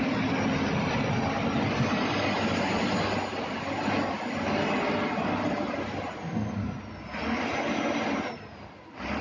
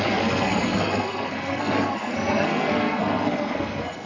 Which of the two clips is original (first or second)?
first